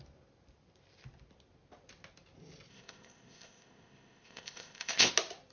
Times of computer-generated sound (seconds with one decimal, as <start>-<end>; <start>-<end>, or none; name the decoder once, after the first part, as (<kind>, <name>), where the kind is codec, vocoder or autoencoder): 2.7-5.1 (codec, ZipCodec)